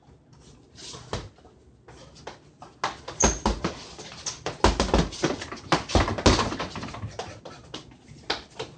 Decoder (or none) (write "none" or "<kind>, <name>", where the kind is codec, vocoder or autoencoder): none